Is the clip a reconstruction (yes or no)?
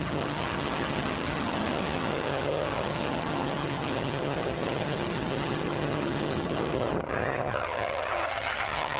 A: yes